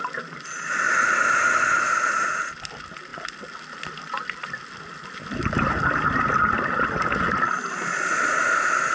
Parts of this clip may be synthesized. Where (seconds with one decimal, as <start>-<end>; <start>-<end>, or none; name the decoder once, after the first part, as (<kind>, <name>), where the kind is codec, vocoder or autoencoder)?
none